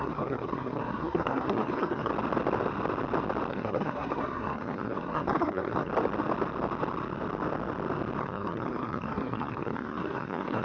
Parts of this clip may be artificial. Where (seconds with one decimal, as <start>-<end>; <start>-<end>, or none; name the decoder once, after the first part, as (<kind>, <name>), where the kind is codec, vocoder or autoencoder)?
0.0-2.1 (codec, SNAC); 3.5-5.9; 8.2-10.6